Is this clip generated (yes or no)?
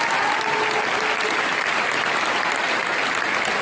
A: no